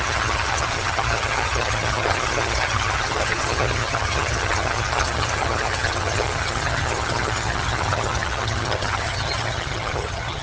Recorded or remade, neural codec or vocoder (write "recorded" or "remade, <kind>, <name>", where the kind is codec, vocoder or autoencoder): remade, vocoder, HiFi-GAN